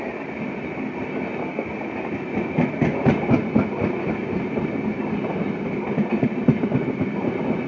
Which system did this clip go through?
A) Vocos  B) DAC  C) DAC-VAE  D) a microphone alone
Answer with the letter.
D